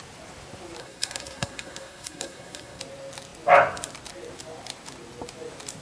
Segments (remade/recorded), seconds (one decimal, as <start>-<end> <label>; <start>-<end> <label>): 0.0-0.8 recorded; 0.8-2.8 remade; 2.8-5.8 recorded